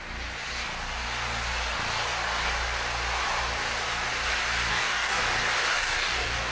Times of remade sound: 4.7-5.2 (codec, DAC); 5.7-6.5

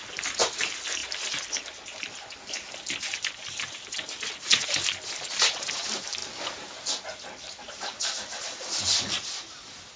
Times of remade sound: none

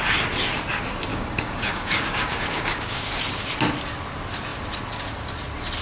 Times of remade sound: 1.1-3.0 (codec, DAC)

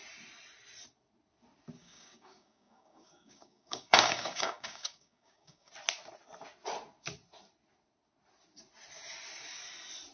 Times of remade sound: 1.8-5.7 (codec, DAC)

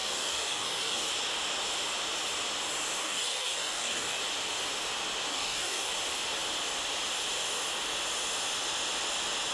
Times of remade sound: 0.0-1.1 (codec, DAC); 3.0-4.2; 5.3-5.9